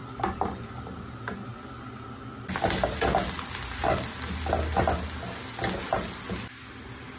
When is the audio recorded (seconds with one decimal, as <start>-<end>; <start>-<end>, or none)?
0.0-7.2